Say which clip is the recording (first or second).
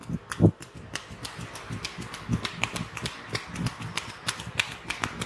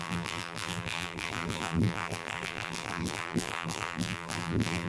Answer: first